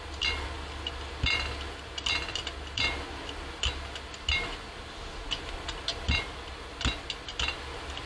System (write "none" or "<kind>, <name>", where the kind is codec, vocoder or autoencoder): none